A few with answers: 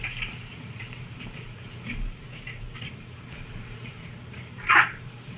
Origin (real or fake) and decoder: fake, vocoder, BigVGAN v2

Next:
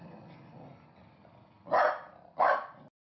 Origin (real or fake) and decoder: real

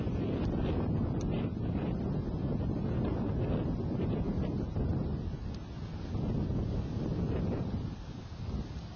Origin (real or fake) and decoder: real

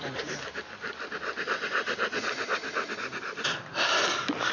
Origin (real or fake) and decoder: real